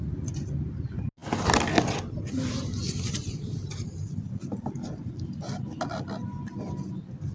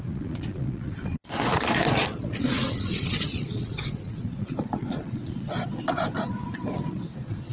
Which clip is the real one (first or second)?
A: first